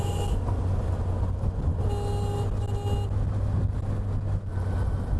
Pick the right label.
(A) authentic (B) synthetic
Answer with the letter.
A